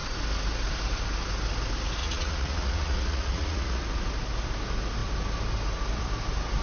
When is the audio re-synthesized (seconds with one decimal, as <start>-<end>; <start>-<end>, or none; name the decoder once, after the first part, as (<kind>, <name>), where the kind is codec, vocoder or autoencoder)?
2.0-3.8 (vocoder, Vocos)